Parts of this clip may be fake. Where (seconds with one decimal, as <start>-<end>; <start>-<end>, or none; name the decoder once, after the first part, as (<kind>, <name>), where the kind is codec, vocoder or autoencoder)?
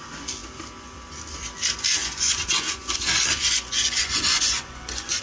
2.0-5.2 (vocoder, Vocos)